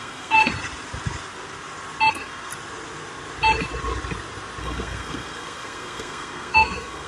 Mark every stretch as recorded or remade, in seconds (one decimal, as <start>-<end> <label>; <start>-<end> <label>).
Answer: 0.0-0.4 remade; 0.4-2.1 recorded; 2.1-2.5 remade; 2.5-4.6 recorded; 4.6-7.1 remade